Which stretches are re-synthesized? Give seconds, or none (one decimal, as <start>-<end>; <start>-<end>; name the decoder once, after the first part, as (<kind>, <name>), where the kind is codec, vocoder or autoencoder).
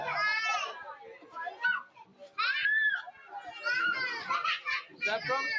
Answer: none